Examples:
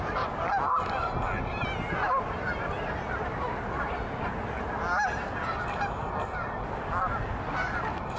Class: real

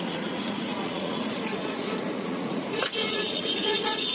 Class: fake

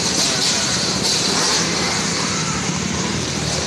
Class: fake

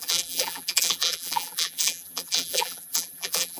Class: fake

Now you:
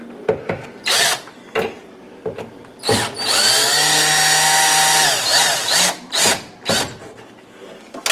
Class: real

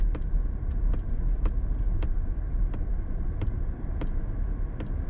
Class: real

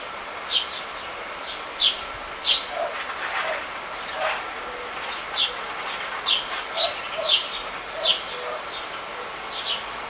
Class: real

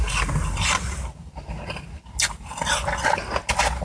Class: real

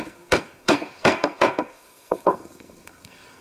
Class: fake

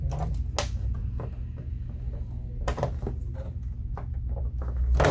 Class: real